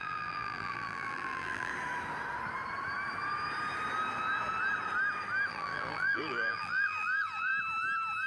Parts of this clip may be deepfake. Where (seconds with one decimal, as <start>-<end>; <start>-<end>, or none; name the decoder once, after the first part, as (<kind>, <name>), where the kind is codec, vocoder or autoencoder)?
0.0-1.7 (vocoder, BigVGAN v2); 5.5-7.5